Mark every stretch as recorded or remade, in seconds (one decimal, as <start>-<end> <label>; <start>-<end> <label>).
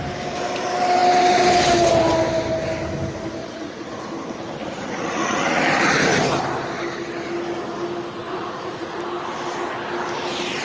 0.0-3.4 recorded; 3.4-4.1 remade; 4.1-4.6 recorded; 4.6-5.6 remade; 5.6-8.2 recorded; 8.2-9.0 remade; 9.0-10.6 recorded